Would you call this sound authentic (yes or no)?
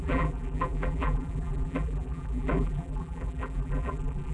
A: no